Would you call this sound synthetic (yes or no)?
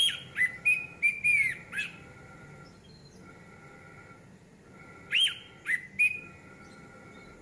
no